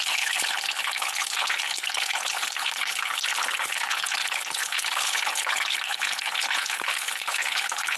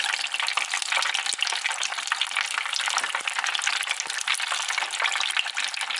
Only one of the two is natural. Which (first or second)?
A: second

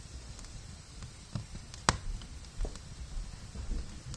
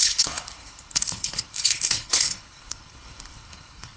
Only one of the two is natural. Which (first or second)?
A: first